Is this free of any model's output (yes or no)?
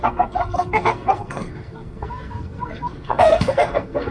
no